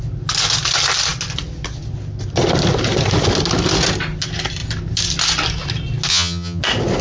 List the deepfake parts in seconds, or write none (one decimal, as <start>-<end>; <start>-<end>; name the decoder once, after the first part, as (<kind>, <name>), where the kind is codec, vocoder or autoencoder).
6.1-6.6 (vocoder, HiFi-GAN)